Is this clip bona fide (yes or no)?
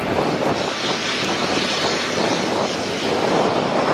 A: yes